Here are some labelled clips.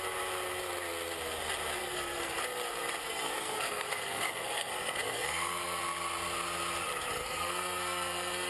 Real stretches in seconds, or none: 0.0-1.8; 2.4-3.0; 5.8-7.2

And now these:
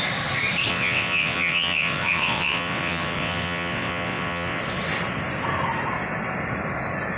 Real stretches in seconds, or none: 0.0-0.7; 4.6-7.2

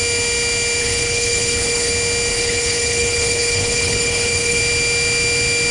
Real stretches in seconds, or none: 0.0-0.8; 1.9-2.3; 4.6-5.7